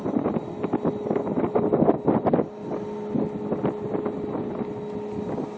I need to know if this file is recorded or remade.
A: recorded